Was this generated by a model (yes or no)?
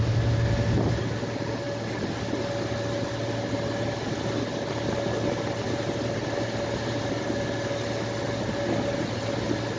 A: no